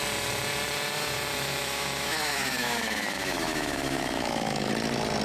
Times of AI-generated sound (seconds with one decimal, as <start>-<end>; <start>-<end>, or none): 1.6-4.7